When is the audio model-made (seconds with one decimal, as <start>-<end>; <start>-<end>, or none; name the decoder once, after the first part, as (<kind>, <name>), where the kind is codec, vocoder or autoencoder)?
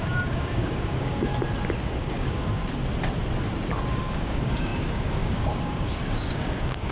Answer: 0.0-1.3 (codec, DAC); 2.0-2.6; 3.9-6.9